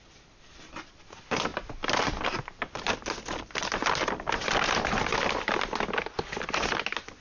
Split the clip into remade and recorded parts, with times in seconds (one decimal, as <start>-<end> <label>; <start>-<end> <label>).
0.0-7.2 recorded